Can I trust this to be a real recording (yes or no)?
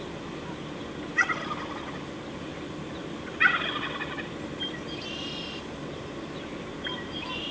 yes